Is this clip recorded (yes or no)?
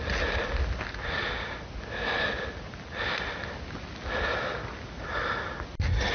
yes